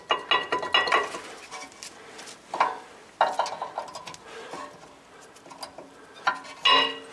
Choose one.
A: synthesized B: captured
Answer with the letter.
B